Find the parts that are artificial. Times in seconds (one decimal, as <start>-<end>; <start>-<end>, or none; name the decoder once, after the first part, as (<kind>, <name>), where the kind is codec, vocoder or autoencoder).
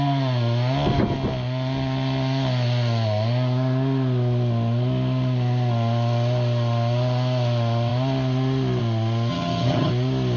9.3-9.9 (vocoder, HiFi-GAN)